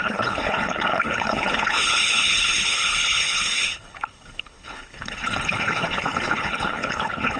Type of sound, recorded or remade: remade